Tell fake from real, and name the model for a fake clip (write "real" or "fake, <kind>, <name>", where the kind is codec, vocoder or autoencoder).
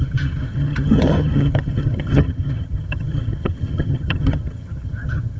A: fake, vocoder, HiFi-GAN